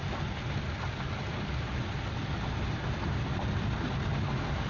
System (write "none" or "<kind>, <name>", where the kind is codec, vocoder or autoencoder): none